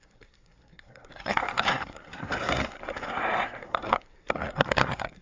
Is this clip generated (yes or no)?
yes